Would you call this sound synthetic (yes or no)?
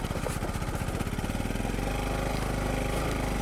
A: no